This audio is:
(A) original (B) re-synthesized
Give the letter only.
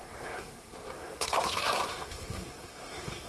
B